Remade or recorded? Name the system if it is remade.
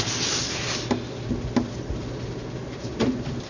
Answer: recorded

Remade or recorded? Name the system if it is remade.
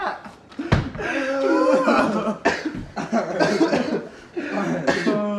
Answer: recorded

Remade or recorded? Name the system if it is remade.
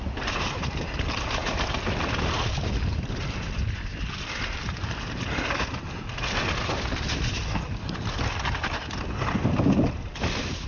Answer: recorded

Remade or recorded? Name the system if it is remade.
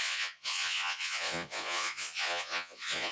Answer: remade, vocoder, Vocos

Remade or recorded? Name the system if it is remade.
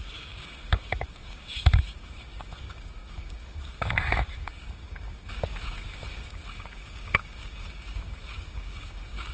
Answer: remade, codec, DAC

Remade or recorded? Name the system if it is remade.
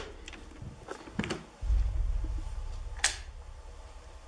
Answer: recorded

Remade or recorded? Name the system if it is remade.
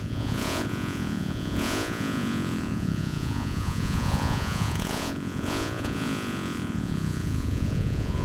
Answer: remade, vocoder, Vocos